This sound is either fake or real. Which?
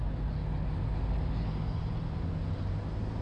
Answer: real